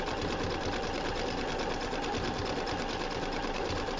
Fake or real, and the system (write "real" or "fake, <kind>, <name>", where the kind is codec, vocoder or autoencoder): real